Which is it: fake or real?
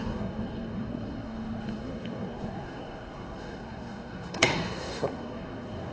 fake